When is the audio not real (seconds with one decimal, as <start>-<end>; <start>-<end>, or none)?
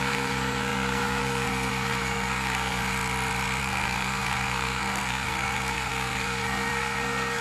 0.0-2.8; 3.6-7.4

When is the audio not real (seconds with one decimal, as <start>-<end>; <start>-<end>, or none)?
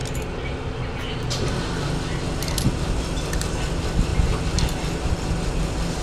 none